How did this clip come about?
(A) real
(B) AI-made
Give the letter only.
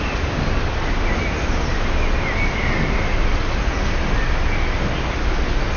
A